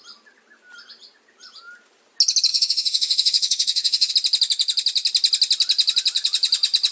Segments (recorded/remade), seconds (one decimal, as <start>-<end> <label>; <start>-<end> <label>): 0.0-2.5 recorded; 2.5-4.1 remade; 4.1-6.9 recorded